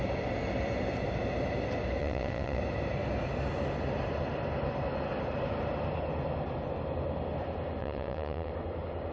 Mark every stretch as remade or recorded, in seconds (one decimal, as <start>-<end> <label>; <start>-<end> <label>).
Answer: 0.0-2.0 recorded; 2.0-2.6 remade; 2.6-7.8 recorded; 7.8-8.5 remade; 8.5-9.1 recorded